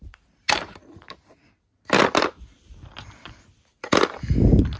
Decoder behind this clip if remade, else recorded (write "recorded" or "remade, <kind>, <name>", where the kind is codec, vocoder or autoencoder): recorded